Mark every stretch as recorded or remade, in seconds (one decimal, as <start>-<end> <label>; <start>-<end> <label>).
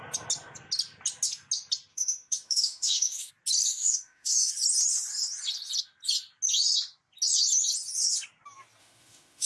0.0-1.9 recorded; 1.9-3.3 remade; 3.3-3.7 recorded; 3.7-4.5 remade; 4.5-8.8 recorded; 8.8-9.5 remade